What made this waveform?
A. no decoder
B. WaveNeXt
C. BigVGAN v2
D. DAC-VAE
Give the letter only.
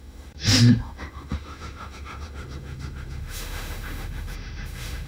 D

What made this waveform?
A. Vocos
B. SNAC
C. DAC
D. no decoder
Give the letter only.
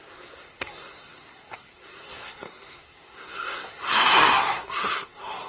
B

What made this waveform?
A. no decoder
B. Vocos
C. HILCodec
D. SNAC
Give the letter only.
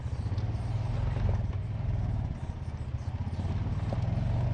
A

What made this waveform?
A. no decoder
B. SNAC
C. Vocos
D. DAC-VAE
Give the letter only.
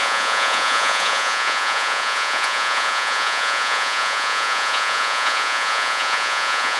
C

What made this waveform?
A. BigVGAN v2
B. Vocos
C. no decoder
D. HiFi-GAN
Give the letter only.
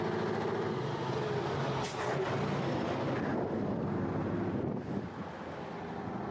C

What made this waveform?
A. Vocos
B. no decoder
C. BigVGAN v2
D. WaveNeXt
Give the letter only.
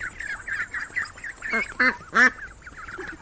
B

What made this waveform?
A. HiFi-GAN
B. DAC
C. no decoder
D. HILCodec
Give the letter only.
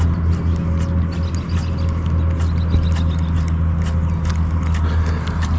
C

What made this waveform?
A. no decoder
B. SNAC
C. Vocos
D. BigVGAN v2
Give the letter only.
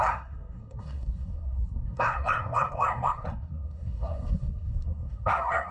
B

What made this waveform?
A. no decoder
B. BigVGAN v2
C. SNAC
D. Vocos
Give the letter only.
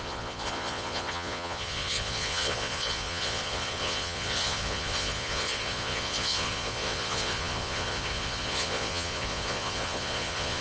D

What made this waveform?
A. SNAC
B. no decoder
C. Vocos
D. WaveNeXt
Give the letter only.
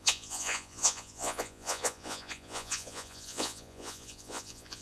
C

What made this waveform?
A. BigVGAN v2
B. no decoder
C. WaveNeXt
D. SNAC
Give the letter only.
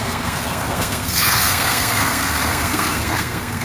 D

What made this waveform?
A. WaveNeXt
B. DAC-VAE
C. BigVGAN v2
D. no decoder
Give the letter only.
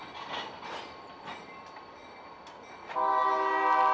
D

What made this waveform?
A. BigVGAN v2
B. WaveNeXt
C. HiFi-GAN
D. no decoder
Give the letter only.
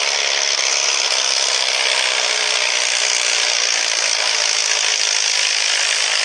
D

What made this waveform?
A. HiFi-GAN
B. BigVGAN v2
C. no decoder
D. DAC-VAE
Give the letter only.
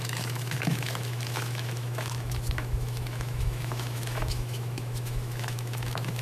D